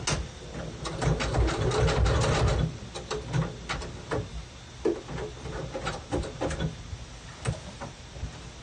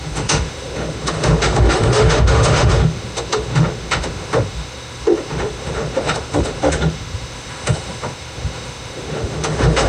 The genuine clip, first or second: first